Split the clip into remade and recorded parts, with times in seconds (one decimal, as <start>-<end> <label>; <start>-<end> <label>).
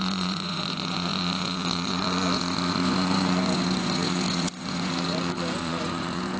0.0-6.4 remade